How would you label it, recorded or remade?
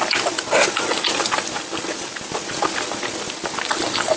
recorded